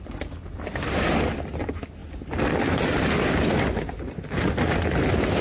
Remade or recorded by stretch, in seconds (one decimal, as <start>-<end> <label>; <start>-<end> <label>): 0.0-5.4 recorded